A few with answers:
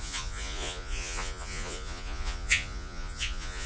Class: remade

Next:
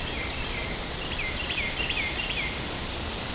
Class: remade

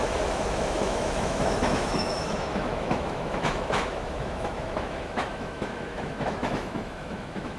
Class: remade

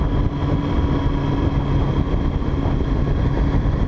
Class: recorded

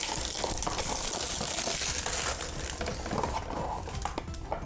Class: recorded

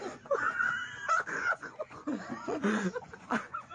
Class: remade